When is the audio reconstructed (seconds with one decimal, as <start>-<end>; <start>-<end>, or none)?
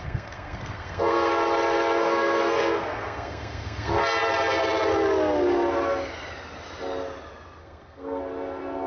0.0-1.3; 2.0-4.0; 7.6-8.2